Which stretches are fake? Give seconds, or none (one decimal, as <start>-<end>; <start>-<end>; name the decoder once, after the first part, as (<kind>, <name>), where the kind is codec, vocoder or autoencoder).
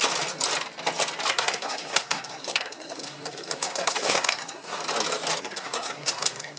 1.3-4.8 (codec, SNAC); 5.4-6.6